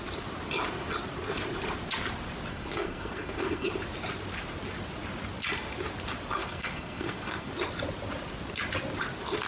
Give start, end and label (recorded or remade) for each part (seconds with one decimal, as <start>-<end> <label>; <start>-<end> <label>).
0.0-2.5 recorded; 2.5-3.7 remade; 3.7-6.4 recorded; 6.4-7.5 remade; 7.5-9.5 recorded